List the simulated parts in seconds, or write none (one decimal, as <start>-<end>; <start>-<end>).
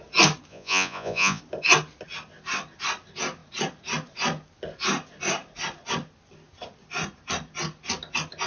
0.5-1.4